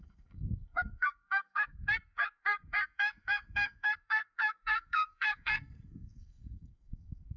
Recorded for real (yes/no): no